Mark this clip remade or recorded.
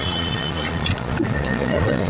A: remade